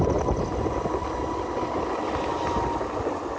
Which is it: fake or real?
real